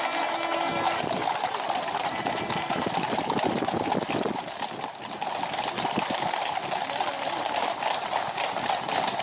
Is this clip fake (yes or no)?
no